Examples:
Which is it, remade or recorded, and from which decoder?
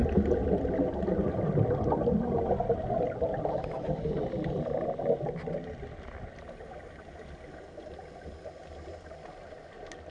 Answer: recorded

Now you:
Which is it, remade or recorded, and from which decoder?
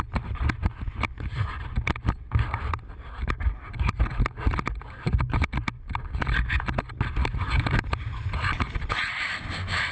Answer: recorded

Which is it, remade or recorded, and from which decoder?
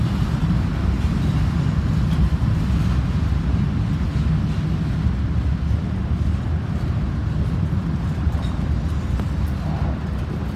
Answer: recorded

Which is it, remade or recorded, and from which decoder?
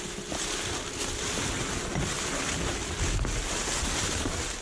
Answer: recorded